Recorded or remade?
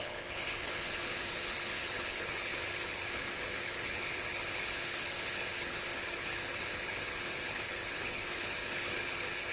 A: remade